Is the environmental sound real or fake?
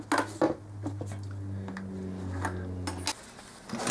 real